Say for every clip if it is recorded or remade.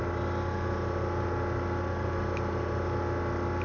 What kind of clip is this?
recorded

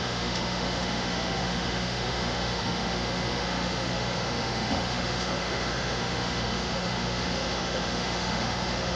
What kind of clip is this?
remade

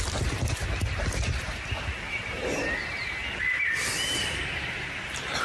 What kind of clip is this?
recorded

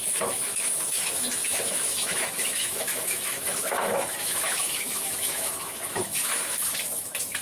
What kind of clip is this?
remade